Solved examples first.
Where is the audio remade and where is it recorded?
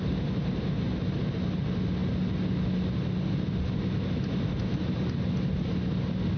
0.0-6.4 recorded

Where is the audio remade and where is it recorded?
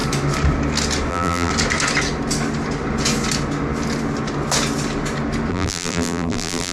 0.0-1.1 recorded; 1.1-1.5 remade; 1.5-5.5 recorded; 5.5-6.7 remade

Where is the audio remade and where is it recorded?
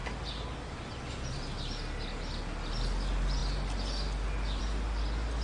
0.0-5.4 recorded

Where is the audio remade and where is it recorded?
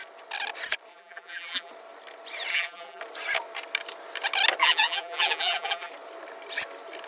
0.0-0.9 recorded; 0.9-1.7 remade; 1.7-2.5 recorded; 2.5-3.0 remade; 3.0-4.6 recorded; 4.6-5.9 remade; 5.9-7.1 recorded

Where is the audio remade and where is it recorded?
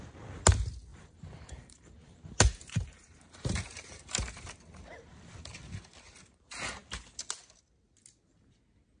0.0-0.9 recorded; 0.9-4.8 remade; 4.8-9.0 recorded